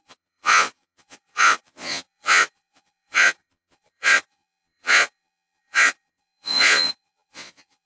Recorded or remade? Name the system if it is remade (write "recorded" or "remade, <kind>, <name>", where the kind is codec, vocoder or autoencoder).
remade, vocoder, Vocos